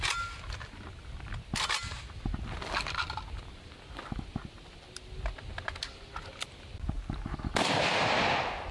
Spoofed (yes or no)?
no